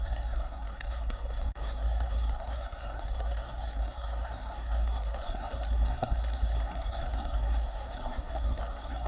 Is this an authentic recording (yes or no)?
no